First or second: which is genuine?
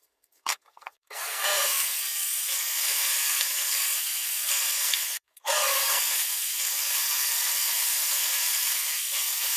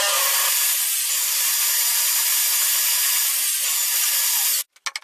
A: second